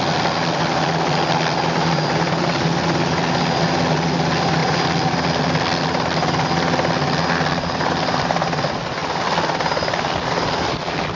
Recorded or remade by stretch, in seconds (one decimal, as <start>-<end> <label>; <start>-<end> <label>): 0.0-11.2 recorded